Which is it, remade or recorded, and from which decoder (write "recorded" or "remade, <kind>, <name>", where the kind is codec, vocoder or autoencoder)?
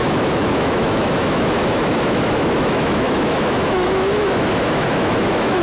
remade, autoencoder, DAC-VAE